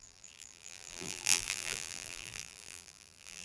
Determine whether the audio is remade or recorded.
remade